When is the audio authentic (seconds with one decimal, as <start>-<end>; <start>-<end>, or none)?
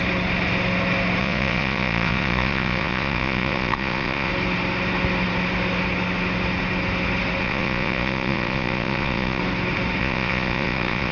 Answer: 0.0-1.2; 4.3-7.4; 9.4-10.0